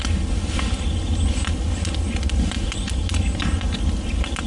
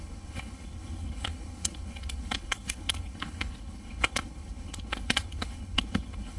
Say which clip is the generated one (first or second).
second